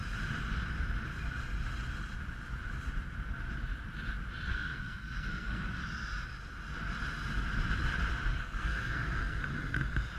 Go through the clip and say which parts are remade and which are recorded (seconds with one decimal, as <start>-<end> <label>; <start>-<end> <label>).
0.0-4.5 recorded; 4.5-5.8 remade; 5.8-8.3 recorded; 8.3-9.4 remade; 9.4-10.2 recorded